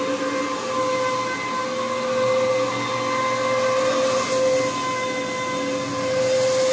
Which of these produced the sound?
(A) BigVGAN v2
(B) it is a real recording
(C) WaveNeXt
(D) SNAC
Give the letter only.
B